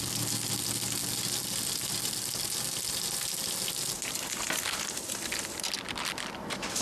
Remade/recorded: recorded